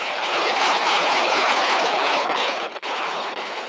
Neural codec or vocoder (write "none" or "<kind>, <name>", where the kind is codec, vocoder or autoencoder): codec, HILCodec